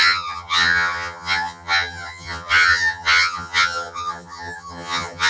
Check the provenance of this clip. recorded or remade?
remade